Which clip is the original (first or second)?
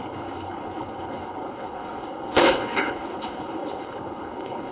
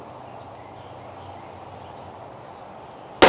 second